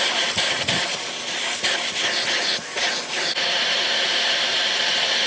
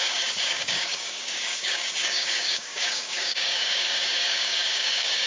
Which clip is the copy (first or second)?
second